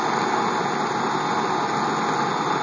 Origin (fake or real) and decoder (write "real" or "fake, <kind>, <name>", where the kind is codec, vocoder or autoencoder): real